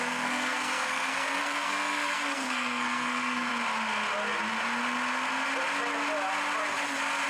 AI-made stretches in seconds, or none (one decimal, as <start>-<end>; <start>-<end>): 0.0-3.5